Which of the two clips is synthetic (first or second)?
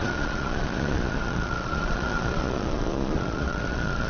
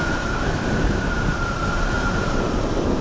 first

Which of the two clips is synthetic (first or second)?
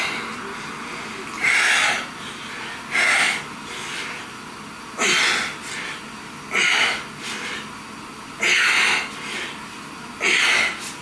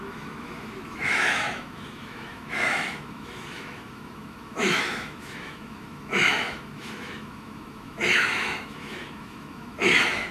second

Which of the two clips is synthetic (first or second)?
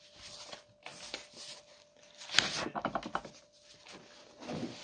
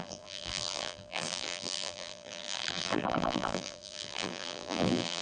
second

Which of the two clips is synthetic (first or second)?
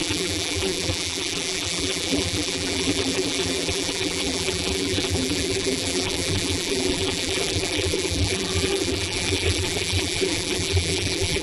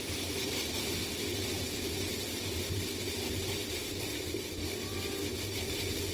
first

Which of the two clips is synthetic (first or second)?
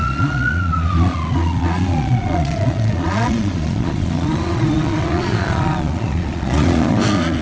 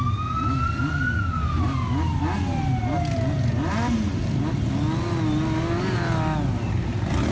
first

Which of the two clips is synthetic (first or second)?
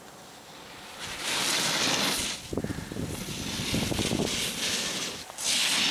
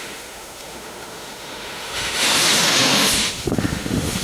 second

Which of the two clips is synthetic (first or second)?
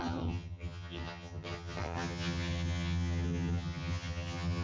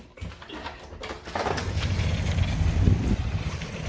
first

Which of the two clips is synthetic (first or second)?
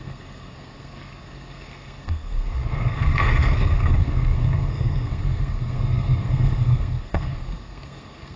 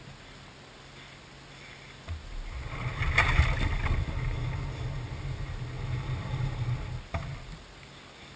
first